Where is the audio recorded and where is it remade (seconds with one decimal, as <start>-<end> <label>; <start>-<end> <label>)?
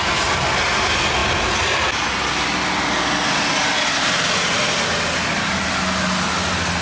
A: 0.0-6.8 recorded